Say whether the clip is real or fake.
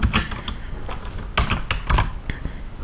real